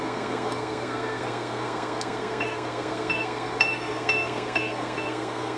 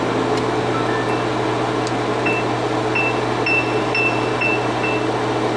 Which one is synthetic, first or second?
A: first